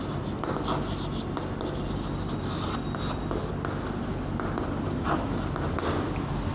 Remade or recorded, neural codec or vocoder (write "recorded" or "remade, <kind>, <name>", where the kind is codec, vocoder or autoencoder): recorded